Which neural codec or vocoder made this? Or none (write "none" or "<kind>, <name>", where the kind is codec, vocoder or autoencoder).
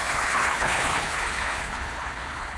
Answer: codec, HILCodec